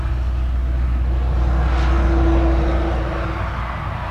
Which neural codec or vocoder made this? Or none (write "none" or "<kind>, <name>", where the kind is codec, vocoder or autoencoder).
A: none